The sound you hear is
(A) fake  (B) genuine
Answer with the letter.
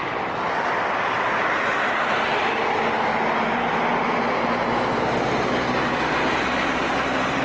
B